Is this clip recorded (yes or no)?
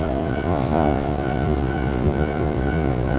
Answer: no